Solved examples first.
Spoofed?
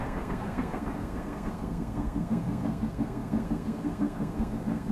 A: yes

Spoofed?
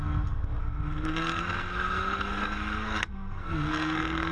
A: yes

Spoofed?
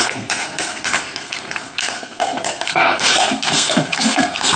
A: yes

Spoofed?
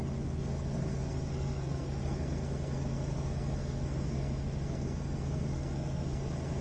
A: yes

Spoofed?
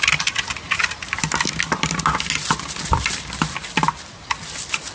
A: no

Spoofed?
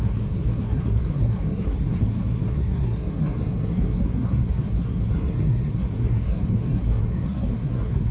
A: yes